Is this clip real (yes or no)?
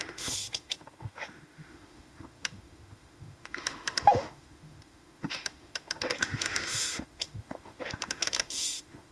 no